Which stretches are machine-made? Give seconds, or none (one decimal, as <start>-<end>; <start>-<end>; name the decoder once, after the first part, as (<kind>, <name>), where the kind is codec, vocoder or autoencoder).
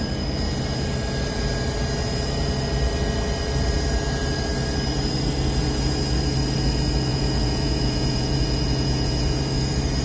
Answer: 7.1-9.4 (vocoder, Vocos)